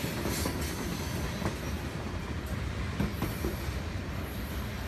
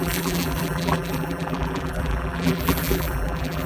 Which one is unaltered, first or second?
first